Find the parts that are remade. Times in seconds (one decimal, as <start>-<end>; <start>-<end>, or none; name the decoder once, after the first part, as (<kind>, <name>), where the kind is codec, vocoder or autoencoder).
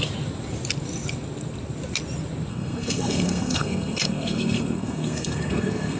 2.5-6.0 (codec, SNAC)